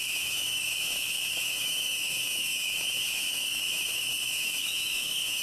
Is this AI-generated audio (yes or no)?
yes